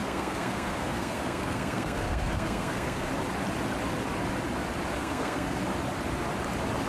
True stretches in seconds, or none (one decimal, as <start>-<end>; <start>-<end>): 3.1-5.0; 5.6-6.9